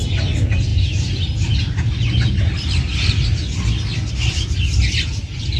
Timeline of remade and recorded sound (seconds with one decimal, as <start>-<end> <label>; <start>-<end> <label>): 0.0-5.6 recorded